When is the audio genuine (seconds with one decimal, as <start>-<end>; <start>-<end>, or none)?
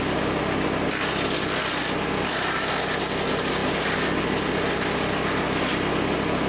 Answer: 0.0-6.5